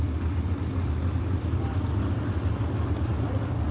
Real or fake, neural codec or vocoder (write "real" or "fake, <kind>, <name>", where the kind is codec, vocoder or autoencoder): real